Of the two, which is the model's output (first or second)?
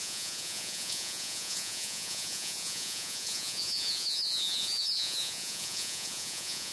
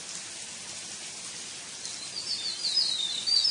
first